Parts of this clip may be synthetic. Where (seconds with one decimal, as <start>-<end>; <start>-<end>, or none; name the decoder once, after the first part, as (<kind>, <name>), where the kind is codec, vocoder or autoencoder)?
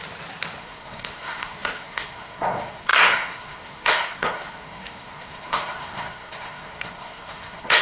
0.6-7.8 (codec, SNAC)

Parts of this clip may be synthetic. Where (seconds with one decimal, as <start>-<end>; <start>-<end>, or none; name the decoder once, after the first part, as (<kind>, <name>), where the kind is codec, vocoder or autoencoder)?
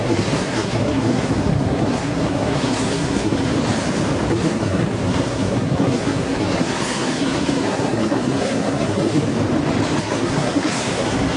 0.0-3.5 (codec, SNAC); 4.3-9.2; 10.0-11.4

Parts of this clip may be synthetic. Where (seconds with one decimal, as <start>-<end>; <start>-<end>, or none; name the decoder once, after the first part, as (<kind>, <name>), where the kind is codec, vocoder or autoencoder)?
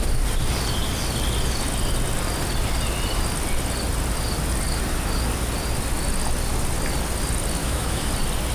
7.6-8.1 (autoencoder, DAC-VAE)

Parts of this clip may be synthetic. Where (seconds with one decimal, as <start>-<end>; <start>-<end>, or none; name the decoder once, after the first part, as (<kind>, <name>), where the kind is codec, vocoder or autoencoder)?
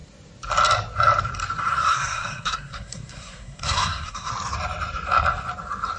1.7-4.3 (codec, SNAC)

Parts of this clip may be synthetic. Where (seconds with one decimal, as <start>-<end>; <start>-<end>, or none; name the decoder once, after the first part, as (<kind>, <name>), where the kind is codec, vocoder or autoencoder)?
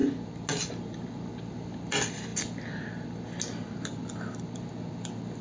none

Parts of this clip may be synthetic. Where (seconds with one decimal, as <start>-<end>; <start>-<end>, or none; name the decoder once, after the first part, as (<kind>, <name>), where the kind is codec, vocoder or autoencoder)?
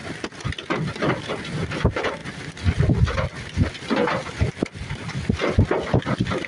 none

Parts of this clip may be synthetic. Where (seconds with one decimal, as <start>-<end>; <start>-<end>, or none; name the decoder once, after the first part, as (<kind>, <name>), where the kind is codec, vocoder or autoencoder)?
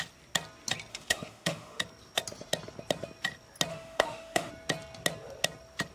0.9-1.8 (autoencoder, DAC-VAE); 3.7-4.5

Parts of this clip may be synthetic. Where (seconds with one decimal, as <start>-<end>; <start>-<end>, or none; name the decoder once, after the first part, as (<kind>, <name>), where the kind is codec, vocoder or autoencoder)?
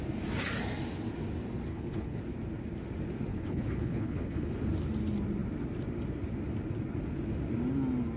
1.7-2.2 (codec, HILCodec); 3.3-4.5